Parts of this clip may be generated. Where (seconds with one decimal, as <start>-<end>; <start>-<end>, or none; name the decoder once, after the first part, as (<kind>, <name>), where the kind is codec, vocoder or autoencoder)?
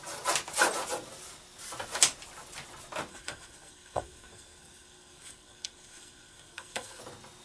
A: 3.1-7.0 (codec, SNAC)